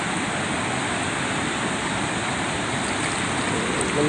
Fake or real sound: real